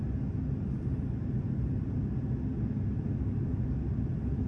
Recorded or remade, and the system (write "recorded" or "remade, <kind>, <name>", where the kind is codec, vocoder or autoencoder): recorded